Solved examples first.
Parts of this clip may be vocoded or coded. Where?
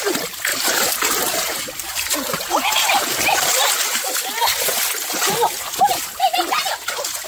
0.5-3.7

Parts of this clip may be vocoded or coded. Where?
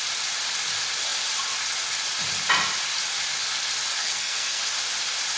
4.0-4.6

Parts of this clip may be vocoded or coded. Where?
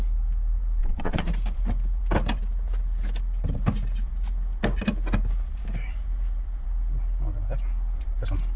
0.8-1.3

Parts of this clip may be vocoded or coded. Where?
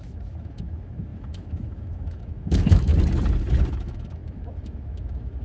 0.0-2.9; 3.7-5.4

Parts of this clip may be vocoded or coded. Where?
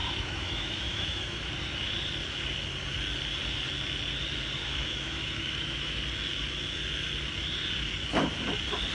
0.0-1.5; 4.6-6.0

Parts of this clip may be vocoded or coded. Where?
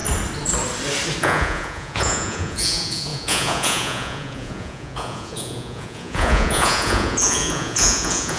1.2-8.4